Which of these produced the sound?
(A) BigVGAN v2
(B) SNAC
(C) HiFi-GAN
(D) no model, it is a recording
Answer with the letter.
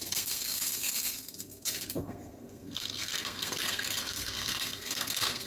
B